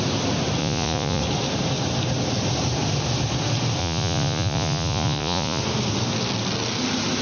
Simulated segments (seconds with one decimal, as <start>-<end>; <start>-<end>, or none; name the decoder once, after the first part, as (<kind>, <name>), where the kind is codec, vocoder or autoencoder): 0.6-1.2 (vocoder, Vocos); 3.8-5.6